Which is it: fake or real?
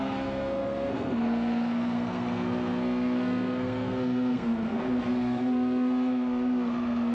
fake